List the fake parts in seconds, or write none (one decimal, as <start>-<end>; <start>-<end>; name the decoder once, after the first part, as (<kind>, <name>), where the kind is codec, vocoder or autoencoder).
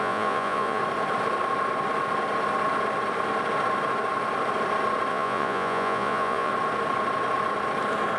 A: 0.0-0.8 (vocoder, Vocos); 5.1-6.5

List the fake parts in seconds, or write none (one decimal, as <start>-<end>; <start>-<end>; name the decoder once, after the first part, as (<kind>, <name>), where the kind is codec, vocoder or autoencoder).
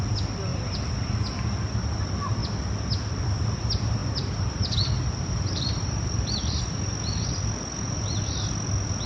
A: 4.0-6.6 (vocoder, BigVGAN v2)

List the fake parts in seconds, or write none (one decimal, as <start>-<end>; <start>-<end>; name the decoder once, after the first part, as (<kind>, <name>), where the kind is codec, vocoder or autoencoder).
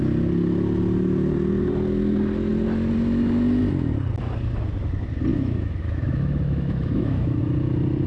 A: 5.3-7.4 (autoencoder, DAC-VAE)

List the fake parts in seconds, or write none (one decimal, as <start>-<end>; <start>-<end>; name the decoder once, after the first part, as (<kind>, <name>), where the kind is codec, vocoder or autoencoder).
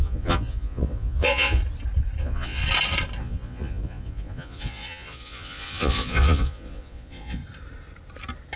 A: 0.0-1.6 (vocoder, Vocos); 2.2-2.6; 3.2-7.4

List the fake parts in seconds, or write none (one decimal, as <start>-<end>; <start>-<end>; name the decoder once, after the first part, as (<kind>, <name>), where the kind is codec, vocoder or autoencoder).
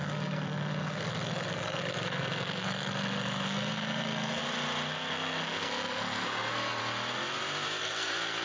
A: 0.0-4.4 (codec, SNAC); 5.1-6.8; 7.8-8.4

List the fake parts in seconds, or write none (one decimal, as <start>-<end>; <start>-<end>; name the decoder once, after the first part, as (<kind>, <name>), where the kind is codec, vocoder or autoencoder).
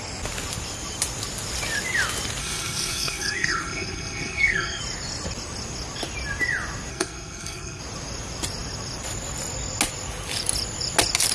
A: 2.4-4.8 (codec, SNAC); 6.9-7.8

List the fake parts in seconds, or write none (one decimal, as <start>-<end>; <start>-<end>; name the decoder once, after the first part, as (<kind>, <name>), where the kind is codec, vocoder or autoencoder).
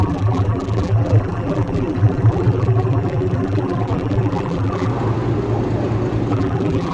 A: 0.0-4.9 (vocoder, BigVGAN v2); 6.3-6.9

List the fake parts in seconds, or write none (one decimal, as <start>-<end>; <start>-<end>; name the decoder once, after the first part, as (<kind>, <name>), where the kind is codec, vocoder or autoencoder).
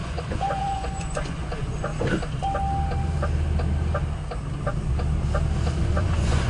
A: 0.0-1.9 (vocoder, Vocos); 5.8-6.5